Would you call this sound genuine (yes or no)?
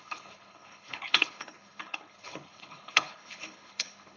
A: no